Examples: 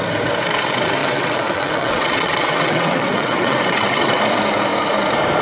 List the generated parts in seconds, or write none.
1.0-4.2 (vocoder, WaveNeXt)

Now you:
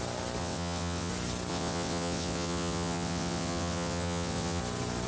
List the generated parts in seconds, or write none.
0.4-1.1 (vocoder, WaveNeXt); 1.5-4.6